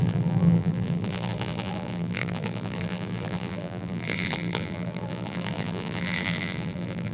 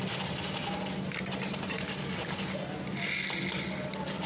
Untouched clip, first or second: second